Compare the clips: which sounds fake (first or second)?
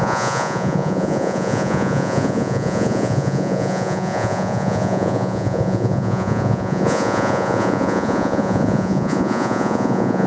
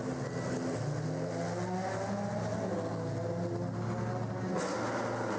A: first